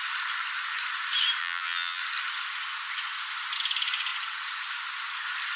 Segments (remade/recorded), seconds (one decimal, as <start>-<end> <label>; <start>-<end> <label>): 0.0-1.4 recorded; 1.4-2.0 remade; 2.0-5.6 recorded